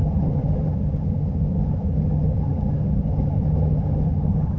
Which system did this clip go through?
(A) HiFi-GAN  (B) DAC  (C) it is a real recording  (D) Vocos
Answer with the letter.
A